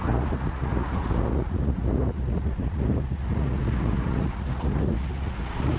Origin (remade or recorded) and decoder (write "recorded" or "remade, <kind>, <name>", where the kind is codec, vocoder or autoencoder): remade, vocoder, Vocos